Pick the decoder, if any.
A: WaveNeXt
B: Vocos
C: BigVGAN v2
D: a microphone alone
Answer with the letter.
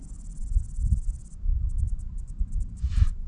C